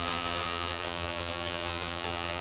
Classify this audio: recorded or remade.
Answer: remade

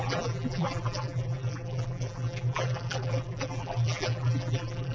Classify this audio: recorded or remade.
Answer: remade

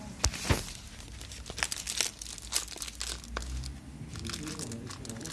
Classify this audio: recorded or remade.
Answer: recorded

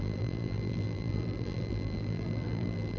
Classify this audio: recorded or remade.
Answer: remade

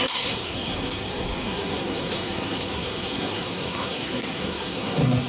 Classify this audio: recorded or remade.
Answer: remade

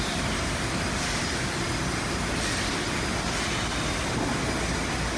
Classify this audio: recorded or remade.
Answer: recorded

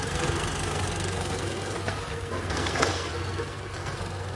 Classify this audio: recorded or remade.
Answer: remade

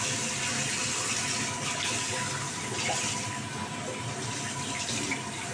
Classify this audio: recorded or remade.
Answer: recorded